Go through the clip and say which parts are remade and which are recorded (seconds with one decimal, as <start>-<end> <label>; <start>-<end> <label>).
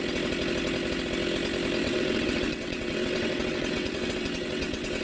0.0-1.8 recorded; 1.8-5.0 remade